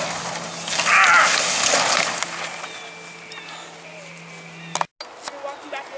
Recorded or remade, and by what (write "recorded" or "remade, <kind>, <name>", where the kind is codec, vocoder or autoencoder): recorded